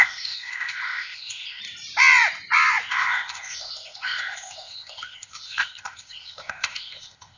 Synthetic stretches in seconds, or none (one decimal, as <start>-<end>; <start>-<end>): 0.0-1.6; 2.9-7.4